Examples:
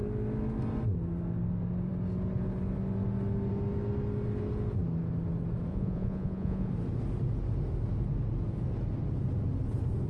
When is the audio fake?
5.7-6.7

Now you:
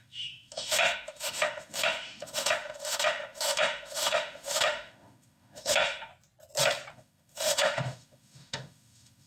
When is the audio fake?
0.0-6.1; 6.9-9.3